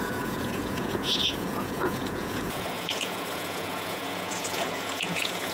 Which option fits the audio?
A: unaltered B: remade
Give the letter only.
B